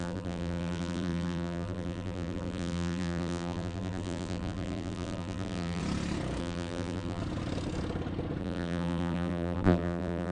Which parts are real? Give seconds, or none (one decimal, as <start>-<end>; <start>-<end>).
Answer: 5.8-6.4; 7.2-8.4